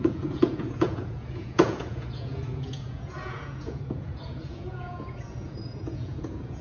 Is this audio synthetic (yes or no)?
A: yes